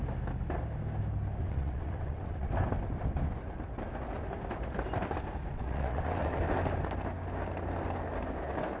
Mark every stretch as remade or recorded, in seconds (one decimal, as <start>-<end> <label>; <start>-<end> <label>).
0.0-1.4 recorded; 1.4-2.5 remade; 2.5-5.5 recorded; 5.5-6.4 remade; 6.4-8.8 recorded